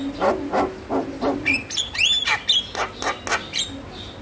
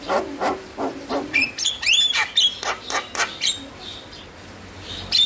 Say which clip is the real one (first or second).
first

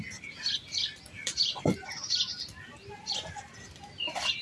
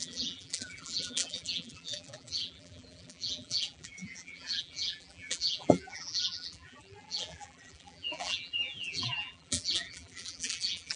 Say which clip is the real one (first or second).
first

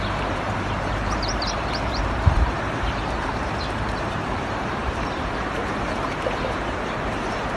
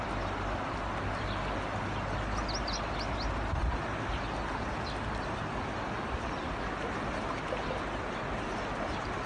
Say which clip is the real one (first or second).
second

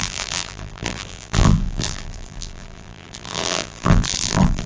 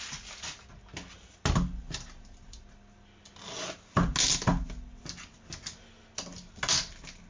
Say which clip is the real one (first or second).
second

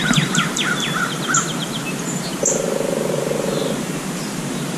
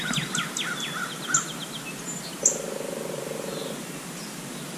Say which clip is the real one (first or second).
second